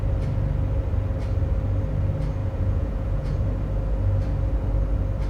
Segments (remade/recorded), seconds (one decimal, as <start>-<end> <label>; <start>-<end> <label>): 0.0-2.4 recorded; 2.4-3.5 remade; 3.5-5.3 recorded